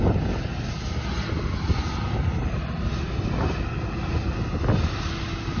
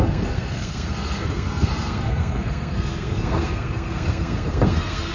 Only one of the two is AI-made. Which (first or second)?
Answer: second